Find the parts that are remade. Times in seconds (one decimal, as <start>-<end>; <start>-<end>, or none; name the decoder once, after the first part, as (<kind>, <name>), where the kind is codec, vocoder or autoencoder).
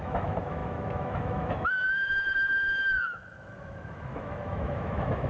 0.0-5.3 (autoencoder, DAC-VAE)